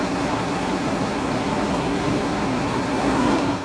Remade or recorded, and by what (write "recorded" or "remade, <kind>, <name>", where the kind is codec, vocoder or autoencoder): remade, codec, SNAC